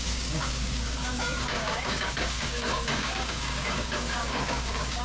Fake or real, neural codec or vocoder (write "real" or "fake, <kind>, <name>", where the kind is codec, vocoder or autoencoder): fake, codec, DAC